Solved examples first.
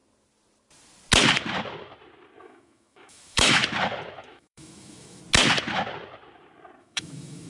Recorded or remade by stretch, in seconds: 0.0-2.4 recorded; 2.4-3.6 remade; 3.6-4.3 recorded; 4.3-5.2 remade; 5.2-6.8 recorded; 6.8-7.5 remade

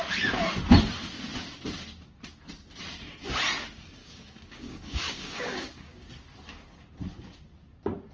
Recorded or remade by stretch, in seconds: 0.0-4.0 recorded; 4.0-6.1 remade; 6.1-8.1 recorded